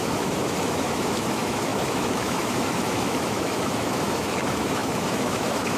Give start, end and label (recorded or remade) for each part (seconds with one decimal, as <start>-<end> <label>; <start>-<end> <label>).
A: 0.0-5.8 remade